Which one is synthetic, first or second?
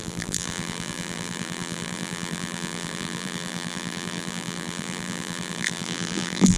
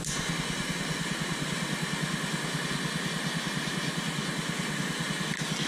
first